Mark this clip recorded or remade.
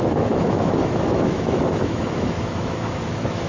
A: remade